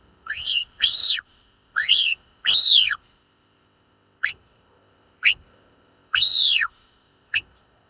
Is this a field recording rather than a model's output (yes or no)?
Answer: no